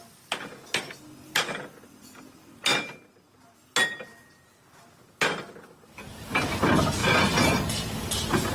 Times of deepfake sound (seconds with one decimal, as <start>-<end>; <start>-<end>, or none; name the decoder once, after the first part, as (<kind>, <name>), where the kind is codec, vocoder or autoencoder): none